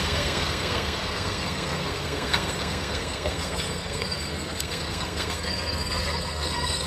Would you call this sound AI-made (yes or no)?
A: yes